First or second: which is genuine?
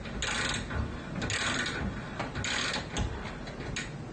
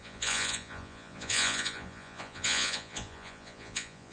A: first